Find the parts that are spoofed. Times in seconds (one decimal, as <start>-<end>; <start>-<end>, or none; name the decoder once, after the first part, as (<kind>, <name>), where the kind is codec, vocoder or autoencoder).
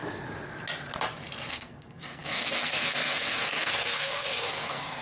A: 1.5-5.0 (codec, SNAC)